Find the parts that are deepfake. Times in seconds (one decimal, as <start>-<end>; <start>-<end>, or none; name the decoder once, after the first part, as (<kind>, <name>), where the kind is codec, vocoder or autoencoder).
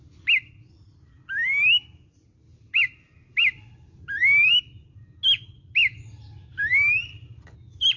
2.5-5.0 (vocoder, BigVGAN v2)